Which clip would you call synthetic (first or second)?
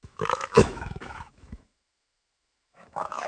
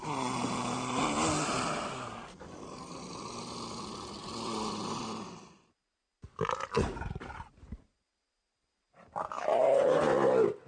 first